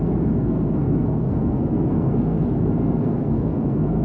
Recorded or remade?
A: remade